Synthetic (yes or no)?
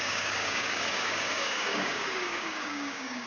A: yes